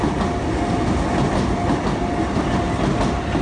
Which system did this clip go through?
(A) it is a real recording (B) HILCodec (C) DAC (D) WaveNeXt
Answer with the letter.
A